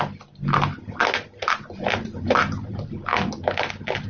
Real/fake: real